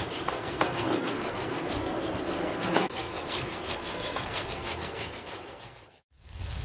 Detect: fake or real fake